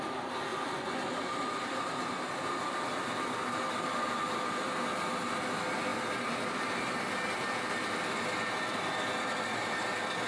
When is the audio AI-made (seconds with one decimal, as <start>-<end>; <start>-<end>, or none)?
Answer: 0.5-1.0